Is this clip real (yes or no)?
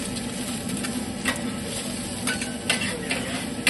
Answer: yes